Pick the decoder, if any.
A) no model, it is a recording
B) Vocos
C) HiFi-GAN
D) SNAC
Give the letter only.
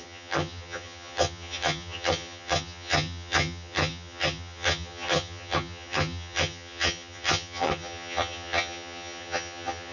C